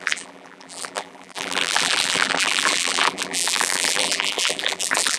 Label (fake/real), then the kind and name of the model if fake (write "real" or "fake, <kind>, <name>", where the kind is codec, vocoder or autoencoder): fake, vocoder, BigVGAN v2